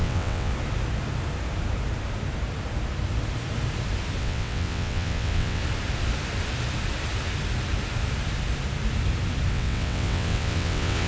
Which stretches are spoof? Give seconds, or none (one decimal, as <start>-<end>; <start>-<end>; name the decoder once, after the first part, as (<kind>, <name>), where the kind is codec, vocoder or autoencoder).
0.0-0.5 (vocoder, WaveNeXt); 4.2-5.6; 9.5-11.1